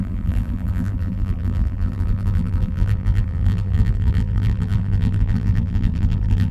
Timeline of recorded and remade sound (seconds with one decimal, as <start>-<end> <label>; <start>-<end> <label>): 0.0-6.5 remade